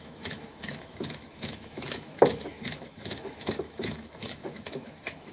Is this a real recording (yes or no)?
no